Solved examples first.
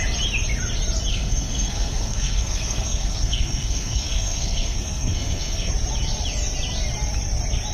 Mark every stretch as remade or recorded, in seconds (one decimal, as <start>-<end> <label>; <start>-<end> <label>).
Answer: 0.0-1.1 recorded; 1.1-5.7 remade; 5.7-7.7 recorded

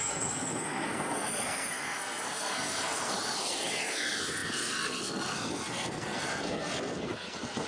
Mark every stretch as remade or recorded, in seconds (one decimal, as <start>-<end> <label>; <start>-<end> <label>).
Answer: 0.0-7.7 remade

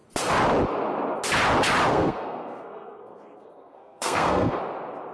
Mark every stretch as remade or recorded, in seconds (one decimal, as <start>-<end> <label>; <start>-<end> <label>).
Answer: 0.0-1.9 recorded; 1.9-4.6 remade; 4.6-5.1 recorded

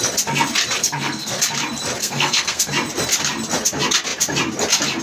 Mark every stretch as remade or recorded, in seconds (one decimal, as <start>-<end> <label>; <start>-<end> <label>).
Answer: 0.0-0.8 recorded; 0.8-1.4 remade; 1.4-2.0 recorded; 2.0-2.7 remade; 2.7-5.0 recorded